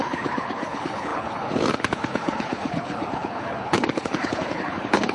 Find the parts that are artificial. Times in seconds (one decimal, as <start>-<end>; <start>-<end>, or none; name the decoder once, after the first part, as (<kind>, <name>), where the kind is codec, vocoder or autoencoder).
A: 0.0-5.1 (codec, HILCodec)